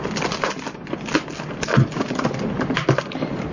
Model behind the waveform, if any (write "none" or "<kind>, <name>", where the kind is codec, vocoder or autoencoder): none